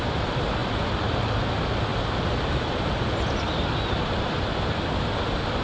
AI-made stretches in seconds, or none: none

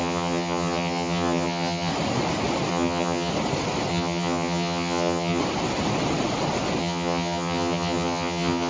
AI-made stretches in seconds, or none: 0.0-1.9 (vocoder, HiFi-GAN); 2.7-3.3; 3.9-5.4; 6.8-8.7

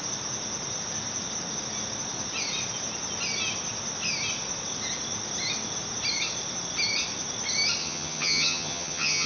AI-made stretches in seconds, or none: 7.8-9.3 (vocoder, HiFi-GAN)

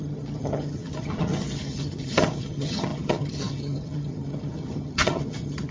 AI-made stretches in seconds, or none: 0.0-5.7 (vocoder, HiFi-GAN)

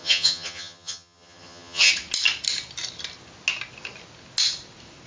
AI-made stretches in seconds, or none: 0.0-1.9 (vocoder, HiFi-GAN)

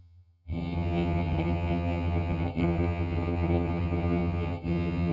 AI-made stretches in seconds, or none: 0.0-5.1 (vocoder, HiFi-GAN)

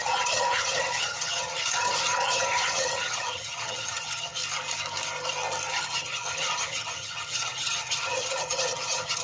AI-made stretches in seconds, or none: 0.0-4.4 (vocoder, HiFi-GAN); 5.7-9.2

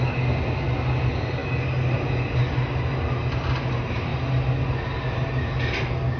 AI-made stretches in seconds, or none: none